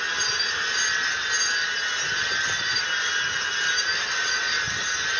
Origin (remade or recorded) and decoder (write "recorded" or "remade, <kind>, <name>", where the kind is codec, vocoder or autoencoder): recorded